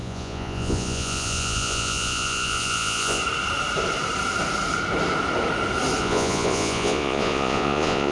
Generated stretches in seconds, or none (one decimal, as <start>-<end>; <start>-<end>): 0.0-3.2; 6.0-8.1

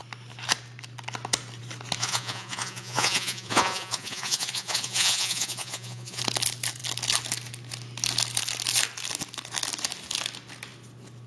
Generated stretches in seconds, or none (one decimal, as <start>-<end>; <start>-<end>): 2.0-6.2